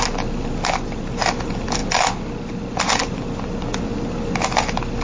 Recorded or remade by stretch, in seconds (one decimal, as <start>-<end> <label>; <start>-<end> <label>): 0.0-5.0 recorded